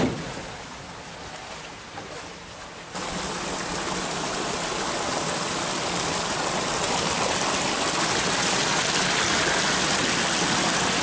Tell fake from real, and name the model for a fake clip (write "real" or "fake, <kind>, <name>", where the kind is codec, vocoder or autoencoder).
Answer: real